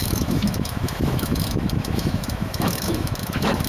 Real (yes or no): no